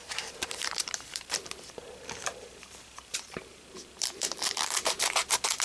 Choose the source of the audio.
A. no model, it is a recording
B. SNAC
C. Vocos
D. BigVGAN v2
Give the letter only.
D